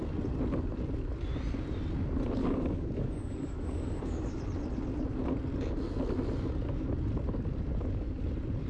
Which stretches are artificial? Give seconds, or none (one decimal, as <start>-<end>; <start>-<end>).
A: 2.4-4.4